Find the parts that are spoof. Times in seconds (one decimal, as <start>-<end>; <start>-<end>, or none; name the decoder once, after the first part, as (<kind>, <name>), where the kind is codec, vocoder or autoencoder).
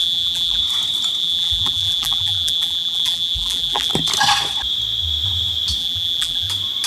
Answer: 0.0-0.6 (vocoder, BigVGAN v2); 1.2-3.9; 5.8-6.5